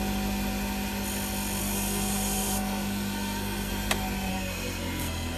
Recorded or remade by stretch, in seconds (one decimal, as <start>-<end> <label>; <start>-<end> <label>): 0.0-1.6 recorded; 1.6-3.7 remade; 3.7-4.3 recorded; 4.3-5.4 remade